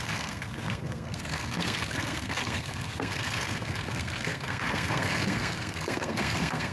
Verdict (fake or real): fake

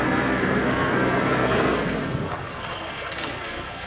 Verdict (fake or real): fake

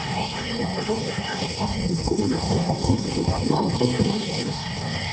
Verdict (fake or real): fake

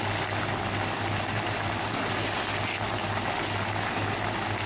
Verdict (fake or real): real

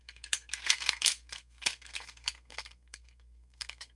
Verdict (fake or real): fake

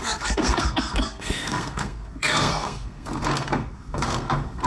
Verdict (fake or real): fake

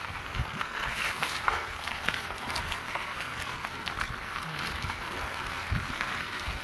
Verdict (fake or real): fake